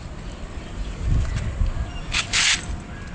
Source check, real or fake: real